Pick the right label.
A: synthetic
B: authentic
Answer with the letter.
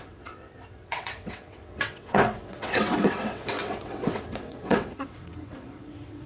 A